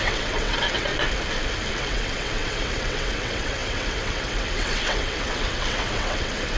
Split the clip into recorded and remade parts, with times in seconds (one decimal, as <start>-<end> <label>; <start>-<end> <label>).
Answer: 0.0-0.9 remade; 0.9-1.7 recorded; 1.7-6.6 remade